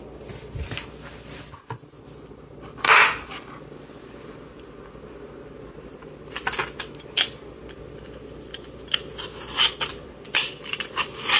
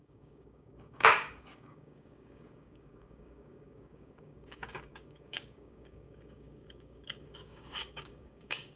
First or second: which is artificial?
second